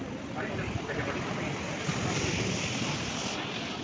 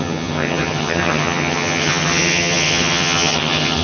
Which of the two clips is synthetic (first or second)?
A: second